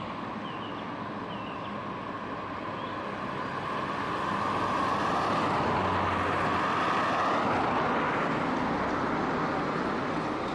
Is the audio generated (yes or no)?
no